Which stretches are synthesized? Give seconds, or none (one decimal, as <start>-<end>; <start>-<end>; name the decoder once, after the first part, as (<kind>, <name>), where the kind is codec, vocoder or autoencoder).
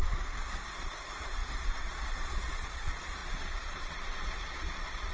0.0-5.1 (vocoder, Vocos)